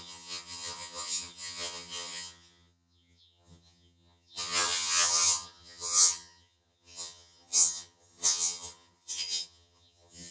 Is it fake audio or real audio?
fake